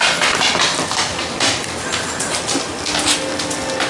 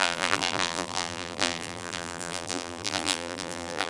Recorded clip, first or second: first